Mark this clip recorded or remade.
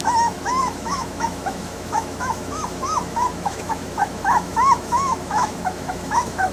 remade